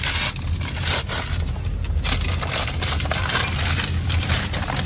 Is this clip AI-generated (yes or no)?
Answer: no